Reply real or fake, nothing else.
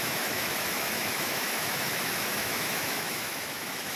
fake